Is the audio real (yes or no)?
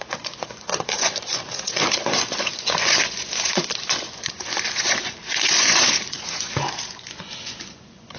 no